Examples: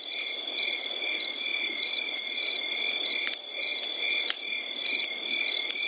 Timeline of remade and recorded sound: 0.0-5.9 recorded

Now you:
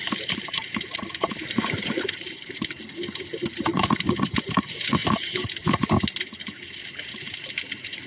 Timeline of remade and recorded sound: 0.0-2.8 remade; 2.8-3.7 recorded; 3.7-4.6 remade; 4.6-5.0 recorded; 5.0-5.9 remade; 5.9-8.1 recorded

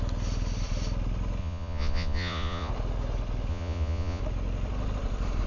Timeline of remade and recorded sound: 0.0-1.4 recorded; 1.4-2.7 remade; 2.7-3.5 recorded; 3.5-4.2 remade; 4.2-5.5 recorded

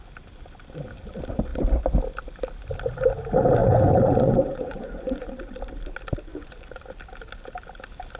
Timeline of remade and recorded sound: 0.0-3.6 recorded; 3.6-5.3 remade; 5.3-6.3 recorded; 6.3-6.8 remade; 6.8-8.2 recorded

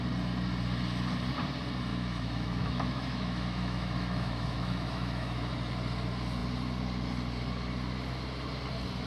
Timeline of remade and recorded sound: 0.0-1.9 recorded; 1.9-5.5 remade; 5.5-9.1 recorded